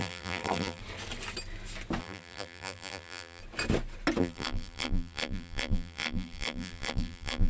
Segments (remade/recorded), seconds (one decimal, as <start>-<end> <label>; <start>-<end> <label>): 0.0-0.8 remade; 0.8-2.0 recorded; 2.0-3.4 remade; 3.4-4.2 recorded; 4.2-7.5 remade